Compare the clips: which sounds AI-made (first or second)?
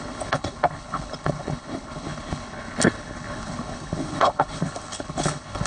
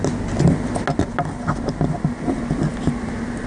first